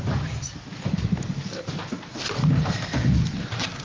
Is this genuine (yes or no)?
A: yes